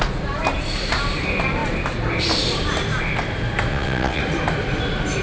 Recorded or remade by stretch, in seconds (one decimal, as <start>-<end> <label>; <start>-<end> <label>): 0.0-3.7 recorded; 3.7-4.2 remade; 4.2-5.2 recorded